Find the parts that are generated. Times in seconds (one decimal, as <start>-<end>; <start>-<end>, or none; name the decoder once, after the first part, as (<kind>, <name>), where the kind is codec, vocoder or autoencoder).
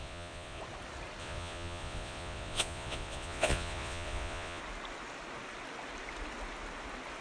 0.0-0.6 (vocoder, Vocos); 1.2-4.6